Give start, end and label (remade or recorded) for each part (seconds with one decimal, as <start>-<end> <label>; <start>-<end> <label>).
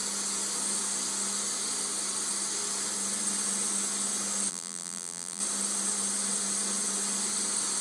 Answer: 0.0-4.5 recorded; 4.5-5.4 remade; 5.4-7.8 recorded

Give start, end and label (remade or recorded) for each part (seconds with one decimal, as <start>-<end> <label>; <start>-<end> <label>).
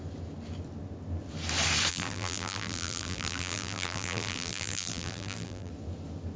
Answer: 0.0-1.9 recorded; 1.9-5.7 remade; 5.7-6.4 recorded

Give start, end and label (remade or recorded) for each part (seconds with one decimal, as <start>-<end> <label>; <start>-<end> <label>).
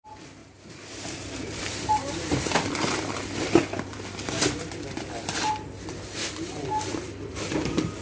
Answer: 0.0-0.4 recorded; 0.4-3.2 remade; 3.2-8.0 recorded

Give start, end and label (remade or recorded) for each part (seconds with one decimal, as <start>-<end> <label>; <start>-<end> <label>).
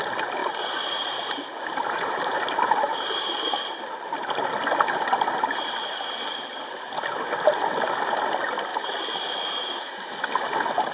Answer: 0.0-0.4 recorded; 0.4-3.7 remade; 3.7-8.7 recorded; 8.7-10.1 remade; 10.1-10.9 recorded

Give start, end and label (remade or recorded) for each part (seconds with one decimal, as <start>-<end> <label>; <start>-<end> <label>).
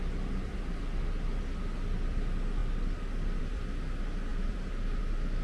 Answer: 0.0-5.4 recorded